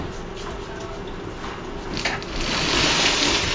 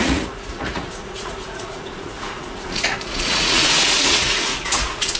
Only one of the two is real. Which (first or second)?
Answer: first